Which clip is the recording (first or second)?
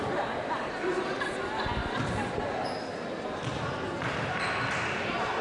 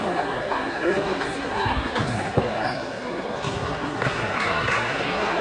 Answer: first